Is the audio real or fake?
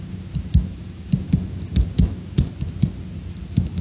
real